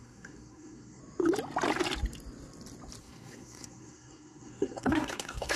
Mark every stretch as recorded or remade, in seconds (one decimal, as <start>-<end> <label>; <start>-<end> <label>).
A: 0.0-1.0 remade; 1.0-3.0 recorded; 3.0-5.6 remade